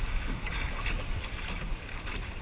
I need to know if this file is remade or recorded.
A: recorded